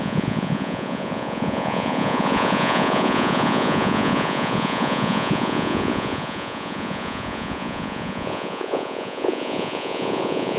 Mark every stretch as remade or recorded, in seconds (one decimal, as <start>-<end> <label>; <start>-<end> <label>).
0.0-10.6 remade